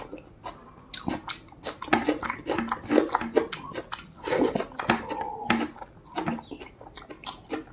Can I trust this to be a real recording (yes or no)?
yes